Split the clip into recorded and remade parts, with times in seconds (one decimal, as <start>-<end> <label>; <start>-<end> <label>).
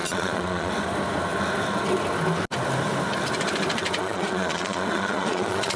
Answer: 0.0-0.7 remade; 0.7-4.0 recorded; 4.0-5.8 remade